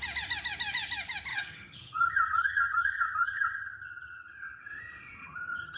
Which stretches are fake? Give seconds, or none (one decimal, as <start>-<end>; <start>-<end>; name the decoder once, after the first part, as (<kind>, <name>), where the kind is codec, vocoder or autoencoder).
1.3-4.8 (vocoder, HiFi-GAN); 5.2-5.8